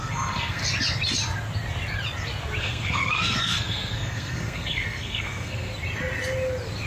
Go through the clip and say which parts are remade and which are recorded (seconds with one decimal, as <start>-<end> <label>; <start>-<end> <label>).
0.0-0.6 remade; 0.6-2.6 recorded; 2.6-5.7 remade; 5.7-6.9 recorded